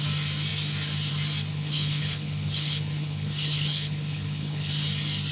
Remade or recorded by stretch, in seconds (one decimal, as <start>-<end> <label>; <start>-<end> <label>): 0.0-1.5 recorded; 1.5-4.7 remade; 4.7-5.3 recorded